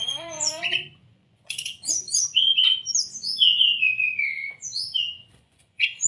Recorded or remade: remade